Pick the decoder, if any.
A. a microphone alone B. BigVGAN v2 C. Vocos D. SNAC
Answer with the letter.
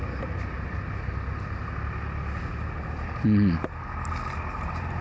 A